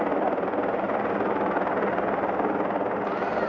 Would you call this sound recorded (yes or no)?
no